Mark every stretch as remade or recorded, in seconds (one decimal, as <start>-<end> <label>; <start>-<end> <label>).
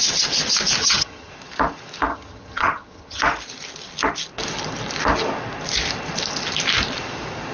0.0-0.8 recorded; 0.8-1.3 remade; 1.3-2.1 recorded; 2.1-3.2 remade; 3.2-7.5 recorded